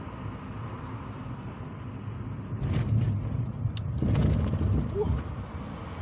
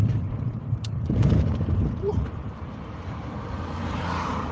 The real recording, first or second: first